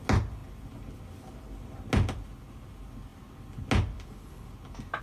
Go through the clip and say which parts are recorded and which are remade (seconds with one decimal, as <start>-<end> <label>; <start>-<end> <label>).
0.0-5.0 recorded

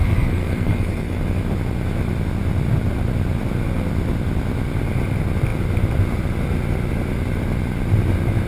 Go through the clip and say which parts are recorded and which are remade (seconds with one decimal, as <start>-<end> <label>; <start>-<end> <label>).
0.0-1.2 remade; 1.2-8.5 recorded

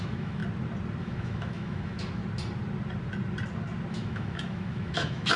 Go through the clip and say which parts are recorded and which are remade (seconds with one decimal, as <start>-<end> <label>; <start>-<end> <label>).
0.0-0.4 remade; 0.4-1.0 recorded; 1.0-2.2 remade; 2.2-3.9 recorded; 3.9-5.4 remade